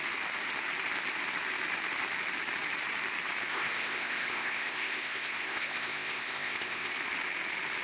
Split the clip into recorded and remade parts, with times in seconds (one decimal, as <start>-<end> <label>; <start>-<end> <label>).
0.0-3.5 recorded; 3.5-6.9 remade; 6.9-7.8 recorded